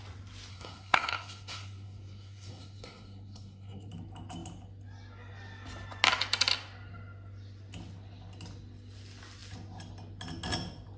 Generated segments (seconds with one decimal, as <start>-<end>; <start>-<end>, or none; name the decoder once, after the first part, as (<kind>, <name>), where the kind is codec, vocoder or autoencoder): 0.5-3.9 (codec, SNAC)